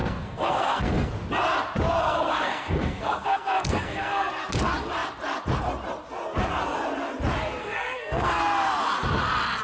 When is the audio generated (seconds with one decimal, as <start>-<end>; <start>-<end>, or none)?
0.0-1.1; 2.0-4.3; 7.6-8.4